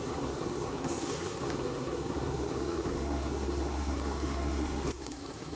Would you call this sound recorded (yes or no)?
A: no